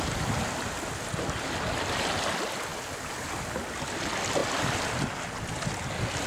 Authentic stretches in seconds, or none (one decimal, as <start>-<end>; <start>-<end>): 0.0-6.3